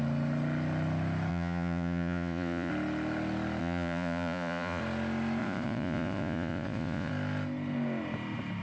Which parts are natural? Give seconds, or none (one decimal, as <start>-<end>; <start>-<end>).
0.0-1.3; 2.7-3.6; 4.8-5.4; 7.1-8.6